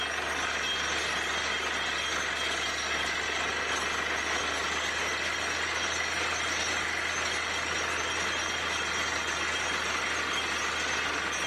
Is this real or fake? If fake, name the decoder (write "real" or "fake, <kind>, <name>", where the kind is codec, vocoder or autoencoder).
real